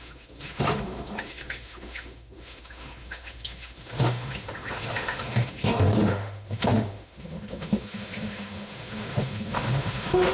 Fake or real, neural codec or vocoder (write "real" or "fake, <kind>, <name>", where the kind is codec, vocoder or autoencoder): fake, autoencoder, DAC-VAE